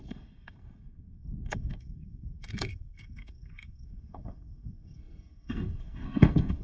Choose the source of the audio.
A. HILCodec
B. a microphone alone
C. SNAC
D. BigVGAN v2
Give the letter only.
C